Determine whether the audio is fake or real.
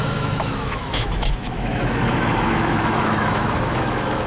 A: fake